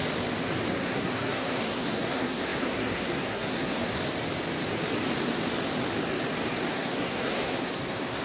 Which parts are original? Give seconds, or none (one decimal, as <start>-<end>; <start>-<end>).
0.0-0.7; 4.0-6.7